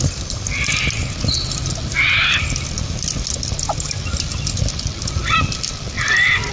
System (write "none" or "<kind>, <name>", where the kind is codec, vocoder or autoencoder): none